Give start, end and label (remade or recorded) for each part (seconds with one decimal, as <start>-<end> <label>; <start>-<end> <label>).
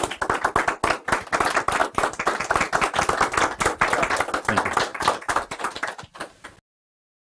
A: 0.0-1.8 recorded; 1.8-3.0 remade; 3.0-4.9 recorded; 4.9-6.0 remade; 6.0-7.3 recorded